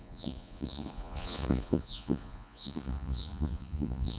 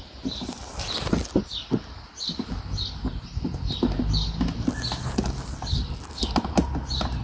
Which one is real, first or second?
second